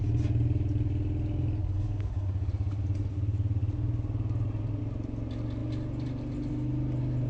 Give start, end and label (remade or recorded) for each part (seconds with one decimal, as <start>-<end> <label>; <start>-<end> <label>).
0.0-1.6 recorded; 1.6-2.5 remade; 2.5-7.3 recorded